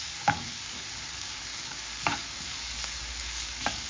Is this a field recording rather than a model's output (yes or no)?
no